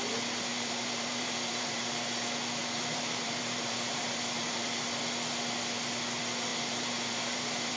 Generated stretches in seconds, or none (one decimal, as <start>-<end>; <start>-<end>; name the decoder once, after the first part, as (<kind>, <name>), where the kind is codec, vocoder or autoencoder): 0.5-1.9 (vocoder, BigVGAN v2); 2.6-5.0; 6.5-7.8